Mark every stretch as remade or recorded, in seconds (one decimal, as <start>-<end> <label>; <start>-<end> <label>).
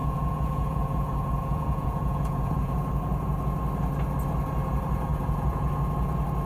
0.0-2.7 remade; 2.7-5.1 recorded; 5.1-5.7 remade; 5.7-6.5 recorded